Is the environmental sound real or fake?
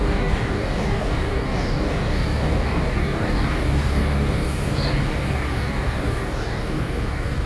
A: fake